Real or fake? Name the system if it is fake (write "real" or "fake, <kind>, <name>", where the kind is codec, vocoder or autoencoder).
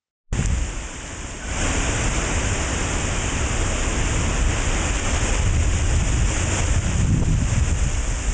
real